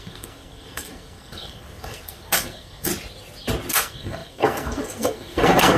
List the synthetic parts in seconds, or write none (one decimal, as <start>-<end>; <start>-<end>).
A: 0.0-2.9; 3.7-5.8